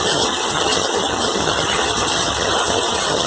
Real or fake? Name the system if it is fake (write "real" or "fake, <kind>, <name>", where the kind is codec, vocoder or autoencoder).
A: fake, vocoder, HiFi-GAN